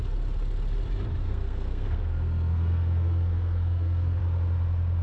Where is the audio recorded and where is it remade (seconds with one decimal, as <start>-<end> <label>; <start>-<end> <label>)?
0.0-1.2 recorded; 1.2-4.2 remade; 4.2-5.0 recorded